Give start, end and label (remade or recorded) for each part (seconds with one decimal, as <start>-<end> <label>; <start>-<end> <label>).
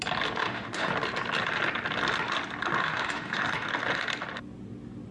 0.0-0.4 recorded; 0.4-0.9 remade; 0.9-2.8 recorded; 2.8-3.4 remade; 3.4-5.1 recorded